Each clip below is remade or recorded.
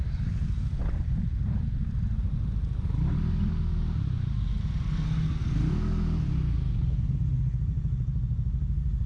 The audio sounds recorded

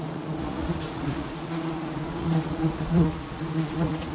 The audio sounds remade